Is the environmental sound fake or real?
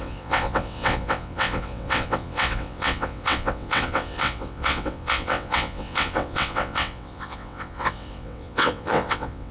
fake